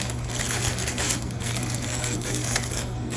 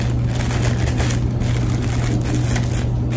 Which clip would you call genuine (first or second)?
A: second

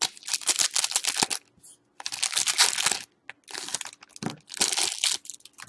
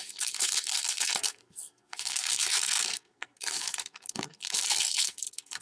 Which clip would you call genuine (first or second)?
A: first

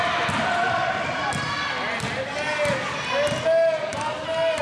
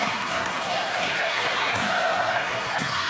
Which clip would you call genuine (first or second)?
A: first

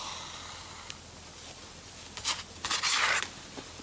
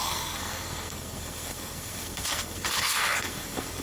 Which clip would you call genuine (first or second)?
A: first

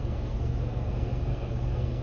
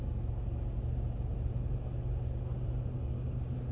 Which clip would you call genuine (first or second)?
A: second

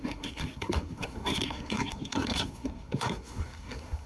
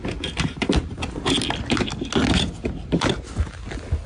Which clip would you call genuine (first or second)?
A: second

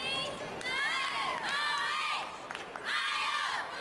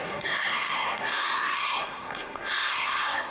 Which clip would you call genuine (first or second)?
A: first